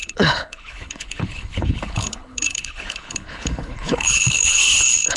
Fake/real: fake